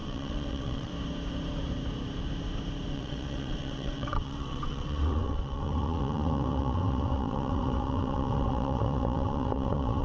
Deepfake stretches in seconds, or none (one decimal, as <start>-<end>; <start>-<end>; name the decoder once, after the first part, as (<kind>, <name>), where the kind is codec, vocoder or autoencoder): 0.0-0.9 (vocoder, WaveNeXt); 2.9-10.0